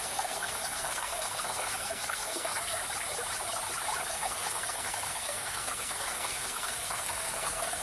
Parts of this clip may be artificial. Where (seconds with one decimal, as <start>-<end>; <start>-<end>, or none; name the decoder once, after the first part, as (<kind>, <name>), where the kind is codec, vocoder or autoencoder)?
0.0-2.8 (codec, SNAC); 4.1-7.8